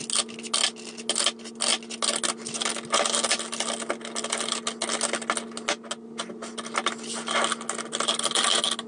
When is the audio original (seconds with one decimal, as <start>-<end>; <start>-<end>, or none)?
0.0-8.9